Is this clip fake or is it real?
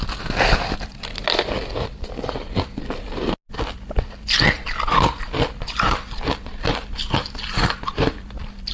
real